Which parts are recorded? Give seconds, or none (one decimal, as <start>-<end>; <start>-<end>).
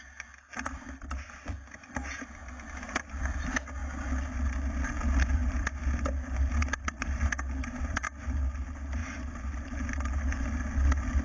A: 0.0-11.2